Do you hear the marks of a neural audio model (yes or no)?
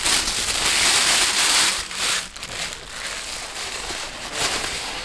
no